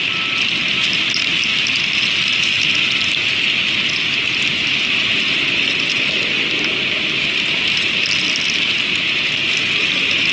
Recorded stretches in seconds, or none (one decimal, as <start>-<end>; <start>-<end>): 0.0-10.3